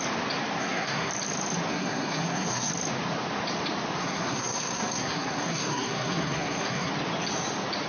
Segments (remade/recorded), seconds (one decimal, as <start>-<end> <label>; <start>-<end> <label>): 0.0-0.6 recorded; 0.6-1.1 remade; 1.1-1.7 recorded; 1.7-2.7 remade; 2.7-4.0 recorded; 4.0-6.9 remade; 6.9-7.9 recorded